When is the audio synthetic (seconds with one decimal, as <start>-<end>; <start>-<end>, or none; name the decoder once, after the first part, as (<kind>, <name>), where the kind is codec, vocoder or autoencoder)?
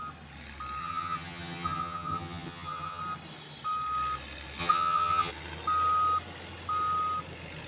0.8-3.0 (vocoder, HiFi-GAN); 4.6-5.3